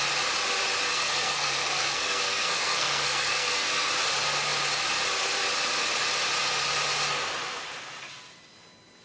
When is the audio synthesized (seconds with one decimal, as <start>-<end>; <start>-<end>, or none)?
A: 0.9-3.9